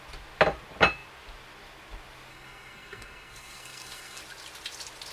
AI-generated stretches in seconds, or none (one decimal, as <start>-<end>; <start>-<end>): 2.3-4.2